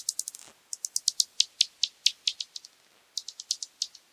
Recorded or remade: recorded